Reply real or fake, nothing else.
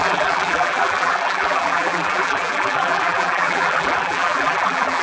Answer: fake